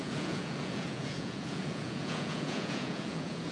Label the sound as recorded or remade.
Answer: remade